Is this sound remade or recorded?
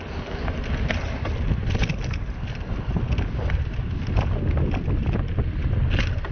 recorded